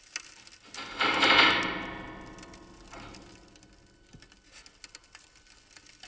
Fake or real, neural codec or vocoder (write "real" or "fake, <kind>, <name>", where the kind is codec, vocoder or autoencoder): real